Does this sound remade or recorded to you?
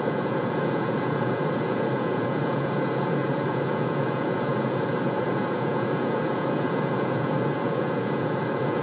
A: remade